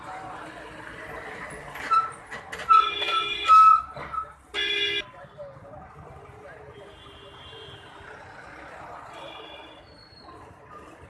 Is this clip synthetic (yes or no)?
no